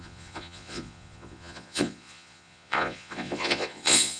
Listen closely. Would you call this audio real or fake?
fake